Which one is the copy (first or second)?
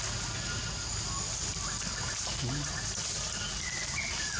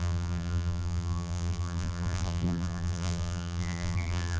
second